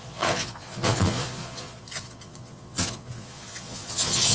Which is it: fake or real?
fake